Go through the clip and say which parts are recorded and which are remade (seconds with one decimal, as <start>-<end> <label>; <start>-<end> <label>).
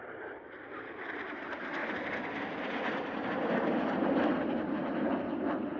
0.0-5.8 recorded